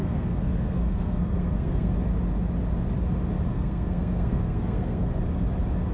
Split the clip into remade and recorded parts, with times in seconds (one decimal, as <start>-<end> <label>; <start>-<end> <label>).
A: 0.0-1.9 remade; 1.9-3.5 recorded; 3.5-5.2 remade; 5.2-5.9 recorded